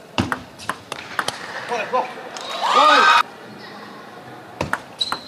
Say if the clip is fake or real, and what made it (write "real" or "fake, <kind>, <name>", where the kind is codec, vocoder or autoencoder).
fake, vocoder, BigVGAN v2